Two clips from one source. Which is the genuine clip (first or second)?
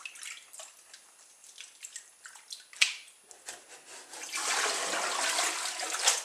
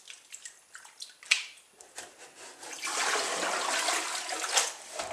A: first